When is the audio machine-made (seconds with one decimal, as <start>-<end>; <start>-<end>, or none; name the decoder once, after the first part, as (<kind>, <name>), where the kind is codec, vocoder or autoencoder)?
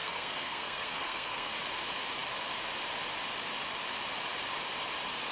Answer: 0.0-1.5 (codec, SNAC)